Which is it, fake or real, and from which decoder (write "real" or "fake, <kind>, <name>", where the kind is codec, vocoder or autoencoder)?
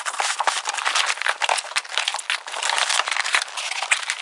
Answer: real